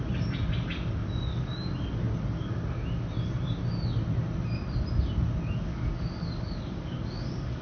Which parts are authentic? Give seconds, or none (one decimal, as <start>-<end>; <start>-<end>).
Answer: 0.0-5.7